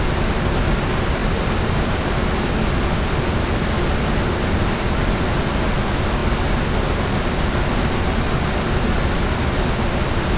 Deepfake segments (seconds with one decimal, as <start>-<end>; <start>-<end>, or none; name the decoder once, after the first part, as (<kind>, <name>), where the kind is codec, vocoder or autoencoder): none